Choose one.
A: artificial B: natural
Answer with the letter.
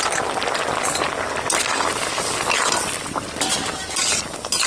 B